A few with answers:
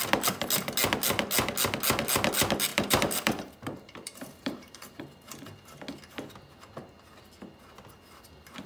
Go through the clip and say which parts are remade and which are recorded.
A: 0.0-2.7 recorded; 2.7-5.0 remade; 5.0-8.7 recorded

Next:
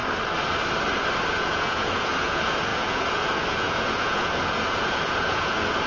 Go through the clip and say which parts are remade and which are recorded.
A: 0.0-1.3 recorded; 1.3-5.9 remade

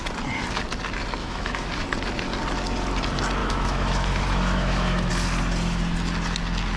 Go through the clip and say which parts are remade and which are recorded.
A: 0.0-1.2 recorded; 1.2-1.7 remade; 1.7-3.4 recorded; 3.4-5.1 remade; 5.1-6.8 recorded

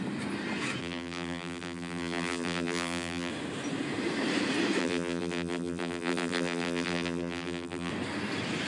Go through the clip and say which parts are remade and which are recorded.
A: 0.0-0.8 recorded; 0.8-3.3 remade; 3.3-4.8 recorded; 4.8-7.9 remade; 7.9-8.7 recorded

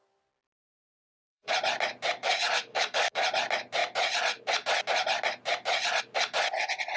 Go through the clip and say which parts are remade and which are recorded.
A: 0.0-0.7 recorded; 0.7-1.5 remade; 1.5-2.2 recorded; 2.2-3.2 remade; 3.2-7.0 recorded